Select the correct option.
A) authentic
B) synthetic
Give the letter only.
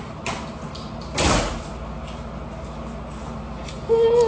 A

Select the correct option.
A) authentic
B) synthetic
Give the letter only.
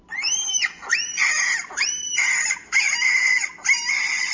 A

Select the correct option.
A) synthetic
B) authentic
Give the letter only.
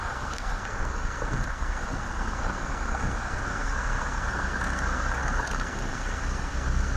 A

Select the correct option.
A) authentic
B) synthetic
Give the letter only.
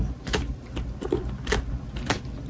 A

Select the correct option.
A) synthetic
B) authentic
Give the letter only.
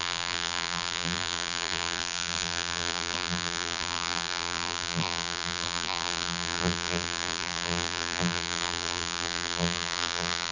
A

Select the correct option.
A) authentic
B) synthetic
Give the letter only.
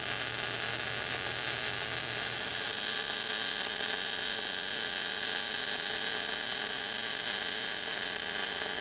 A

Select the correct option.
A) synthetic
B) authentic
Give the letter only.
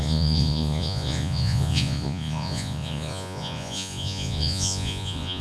A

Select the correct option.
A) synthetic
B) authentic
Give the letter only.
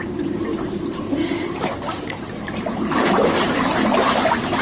A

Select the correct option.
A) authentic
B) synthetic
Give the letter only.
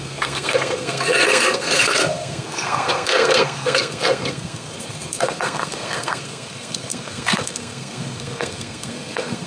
B